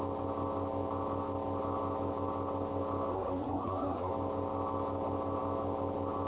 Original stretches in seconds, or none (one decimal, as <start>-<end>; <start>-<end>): 0.0-3.1; 4.1-6.3